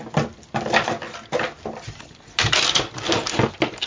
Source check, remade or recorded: recorded